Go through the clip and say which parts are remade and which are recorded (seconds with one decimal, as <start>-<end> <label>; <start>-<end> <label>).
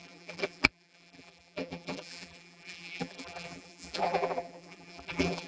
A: 0.0-5.5 remade